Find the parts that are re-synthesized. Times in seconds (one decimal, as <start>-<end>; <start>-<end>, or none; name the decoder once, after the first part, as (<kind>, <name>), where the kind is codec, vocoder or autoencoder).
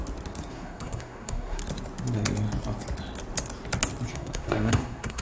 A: 0.5-1.6 (codec, SNAC); 4.1-5.2